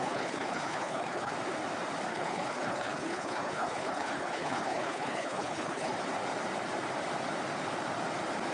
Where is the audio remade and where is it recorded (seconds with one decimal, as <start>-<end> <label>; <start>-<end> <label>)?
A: 0.0-1.3 remade; 1.3-2.1 recorded; 2.1-5.9 remade; 5.9-8.5 recorded